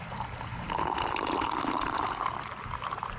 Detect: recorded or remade recorded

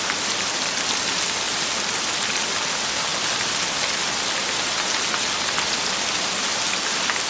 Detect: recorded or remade recorded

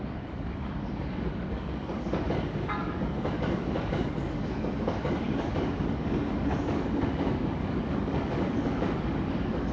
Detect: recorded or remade remade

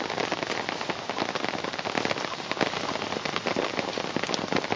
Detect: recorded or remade recorded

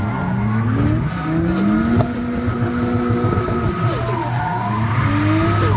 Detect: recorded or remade recorded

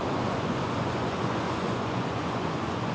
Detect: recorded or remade remade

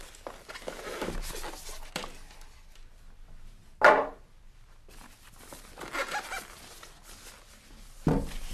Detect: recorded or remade recorded